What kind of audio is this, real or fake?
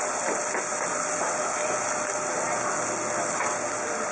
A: real